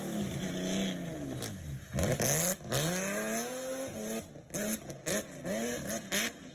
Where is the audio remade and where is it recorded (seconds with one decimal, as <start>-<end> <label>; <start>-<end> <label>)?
0.0-6.5 recorded